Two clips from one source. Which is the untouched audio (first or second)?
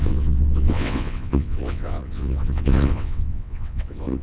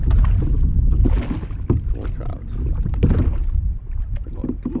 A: second